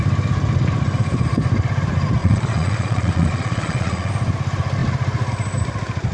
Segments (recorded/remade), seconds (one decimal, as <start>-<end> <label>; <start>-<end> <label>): 0.0-2.2 recorded; 2.2-4.1 remade; 4.1-6.1 recorded